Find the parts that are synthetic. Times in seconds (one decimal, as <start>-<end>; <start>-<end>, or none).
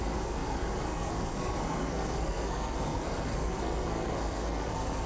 0.0-5.1